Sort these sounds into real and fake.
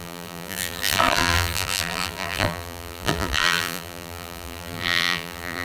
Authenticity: fake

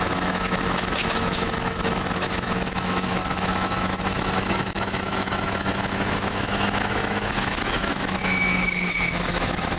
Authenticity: fake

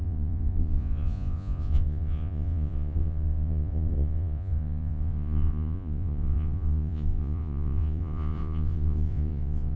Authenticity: fake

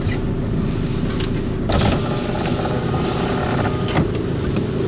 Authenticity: real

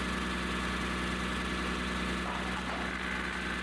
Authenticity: real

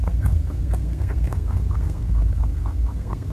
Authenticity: fake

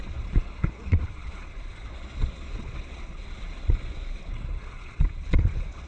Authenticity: fake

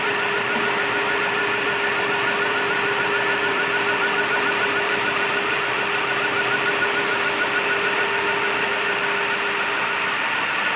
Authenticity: fake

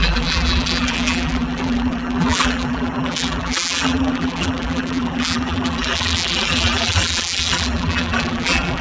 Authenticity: fake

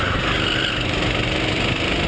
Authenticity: real